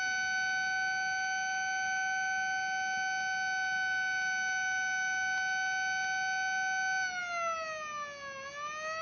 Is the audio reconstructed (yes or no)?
no